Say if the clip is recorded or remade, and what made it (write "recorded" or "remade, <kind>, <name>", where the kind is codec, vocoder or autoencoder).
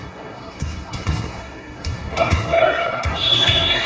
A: remade, codec, SNAC